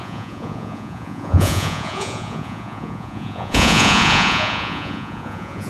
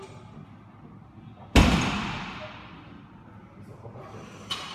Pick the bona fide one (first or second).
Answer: second